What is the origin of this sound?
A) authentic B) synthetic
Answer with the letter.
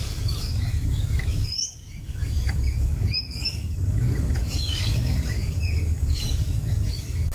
B